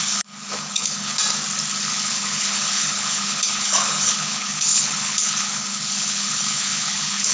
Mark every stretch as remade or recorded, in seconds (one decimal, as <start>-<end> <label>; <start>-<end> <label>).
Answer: 0.0-1.2 remade; 1.2-1.9 recorded; 1.9-7.3 remade